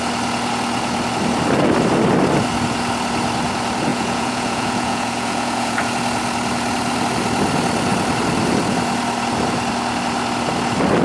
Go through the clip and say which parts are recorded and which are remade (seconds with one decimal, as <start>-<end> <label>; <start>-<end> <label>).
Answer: 0.0-3.9 recorded; 3.9-5.8 remade; 5.8-11.0 recorded